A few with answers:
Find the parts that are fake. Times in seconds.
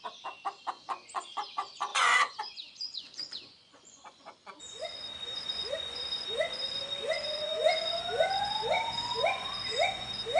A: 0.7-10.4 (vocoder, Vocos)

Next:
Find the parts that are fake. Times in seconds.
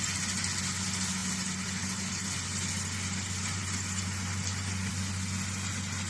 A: none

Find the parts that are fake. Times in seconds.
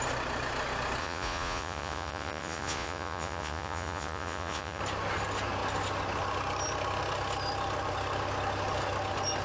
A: 1.0-4.8 (vocoder, Vocos)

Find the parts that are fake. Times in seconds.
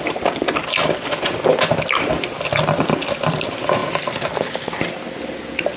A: none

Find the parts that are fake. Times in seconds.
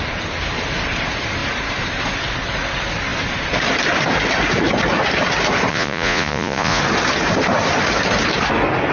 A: 5.7-6.8 (vocoder, Vocos)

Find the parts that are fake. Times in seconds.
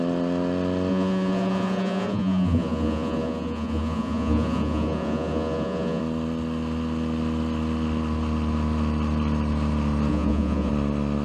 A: 0.9-6.0 (vocoder, Vocos); 10.1-10.7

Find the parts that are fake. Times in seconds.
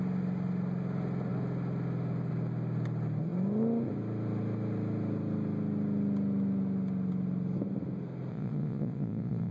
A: 8.3-9.5 (vocoder, Vocos)